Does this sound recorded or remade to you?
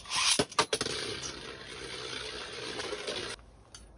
recorded